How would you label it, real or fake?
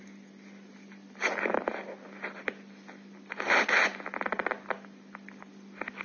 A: real